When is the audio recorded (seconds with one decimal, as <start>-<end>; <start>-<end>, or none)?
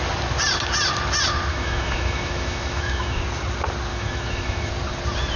0.0-1.5; 3.2-3.9; 4.7-5.4